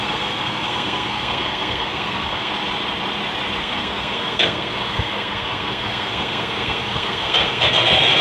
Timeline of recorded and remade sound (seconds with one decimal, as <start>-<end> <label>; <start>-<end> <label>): 0.0-2.5 remade; 2.5-3.6 recorded; 3.6-8.2 remade